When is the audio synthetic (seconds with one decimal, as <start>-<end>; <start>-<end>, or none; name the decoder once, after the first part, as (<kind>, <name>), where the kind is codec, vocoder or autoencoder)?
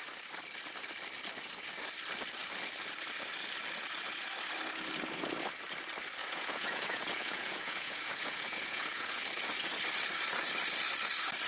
6.2-9.2 (vocoder, Vocos)